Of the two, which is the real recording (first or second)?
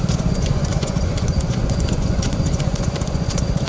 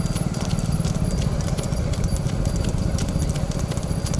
second